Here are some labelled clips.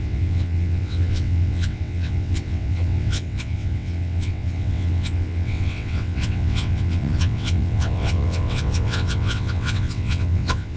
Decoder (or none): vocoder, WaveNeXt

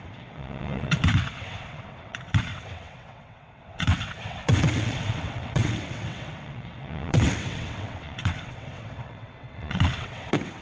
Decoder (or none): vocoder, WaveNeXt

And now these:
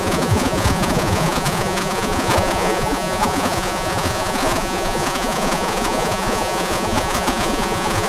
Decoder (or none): vocoder, Vocos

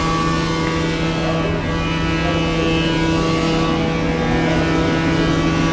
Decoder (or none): none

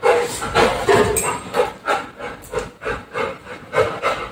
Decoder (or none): none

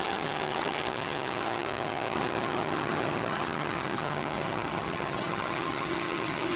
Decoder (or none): vocoder, HiFi-GAN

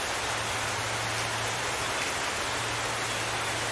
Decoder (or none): none